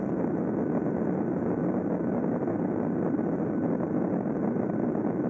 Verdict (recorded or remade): recorded